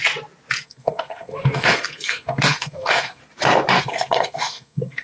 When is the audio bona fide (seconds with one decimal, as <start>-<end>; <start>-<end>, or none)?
0.0-0.6; 3.2-3.8